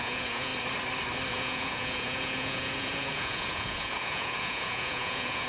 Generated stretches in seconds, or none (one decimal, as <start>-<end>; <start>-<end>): 0.0-0.5; 1.3-5.5